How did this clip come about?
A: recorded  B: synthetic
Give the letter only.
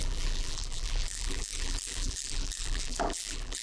B